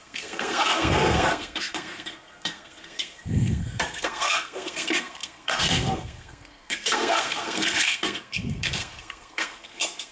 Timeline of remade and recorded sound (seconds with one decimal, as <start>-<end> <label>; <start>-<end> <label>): 0.0-10.1 remade